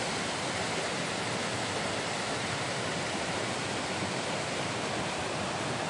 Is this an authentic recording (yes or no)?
yes